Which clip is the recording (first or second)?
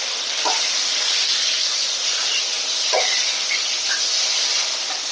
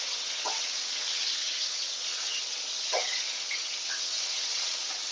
first